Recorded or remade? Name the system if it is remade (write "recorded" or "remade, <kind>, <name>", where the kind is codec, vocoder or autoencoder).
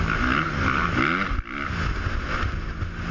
recorded